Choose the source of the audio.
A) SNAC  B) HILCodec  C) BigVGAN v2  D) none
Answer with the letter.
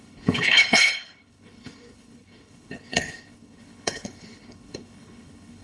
B